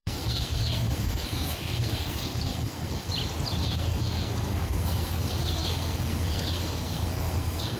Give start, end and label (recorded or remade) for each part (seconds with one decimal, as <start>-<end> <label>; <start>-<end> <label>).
0.0-3.1 remade; 3.1-3.6 recorded; 3.6-7.8 remade